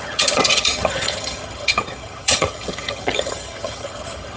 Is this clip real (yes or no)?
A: no